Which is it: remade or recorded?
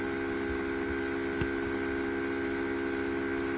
recorded